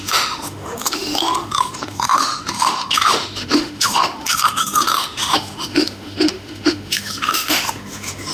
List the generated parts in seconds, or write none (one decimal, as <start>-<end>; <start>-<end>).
0.0-8.3